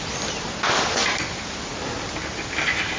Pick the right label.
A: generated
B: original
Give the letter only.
B